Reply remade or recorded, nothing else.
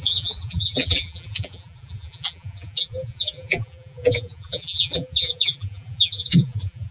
remade